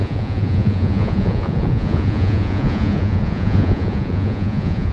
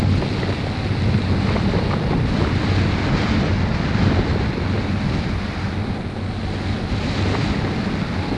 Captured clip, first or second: second